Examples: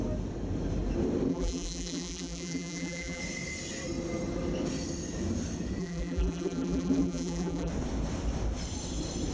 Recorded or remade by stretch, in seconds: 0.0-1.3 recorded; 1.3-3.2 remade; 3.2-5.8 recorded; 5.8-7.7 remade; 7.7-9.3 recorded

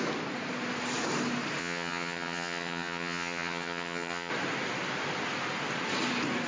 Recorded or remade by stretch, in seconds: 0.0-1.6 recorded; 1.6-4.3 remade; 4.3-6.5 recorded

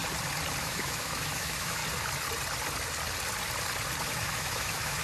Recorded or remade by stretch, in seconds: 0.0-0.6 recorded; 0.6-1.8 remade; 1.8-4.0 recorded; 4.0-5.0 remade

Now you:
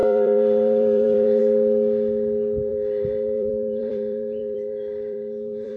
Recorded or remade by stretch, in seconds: 0.0-1.4 remade; 1.4-2.7 recorded; 2.7-5.8 remade

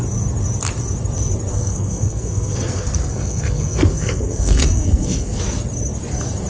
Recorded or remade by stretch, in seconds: 0.0-1.5 recorded; 1.5-5.4 remade; 5.4-6.5 recorded

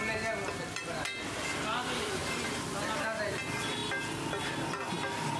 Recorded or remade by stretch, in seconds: 0.0-5.4 recorded